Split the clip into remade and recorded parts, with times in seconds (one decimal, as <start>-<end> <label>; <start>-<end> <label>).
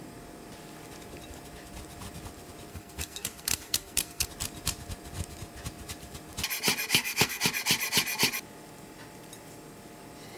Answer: 0.0-2.7 recorded; 2.7-4.3 remade; 4.3-6.9 recorded; 6.9-7.4 remade; 7.4-10.4 recorded